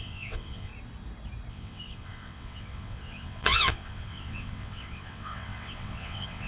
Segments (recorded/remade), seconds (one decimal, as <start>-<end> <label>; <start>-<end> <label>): 0.0-0.7 remade; 0.7-1.5 recorded; 1.5-6.5 remade